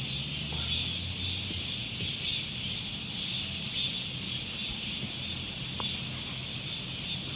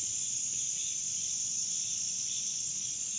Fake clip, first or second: second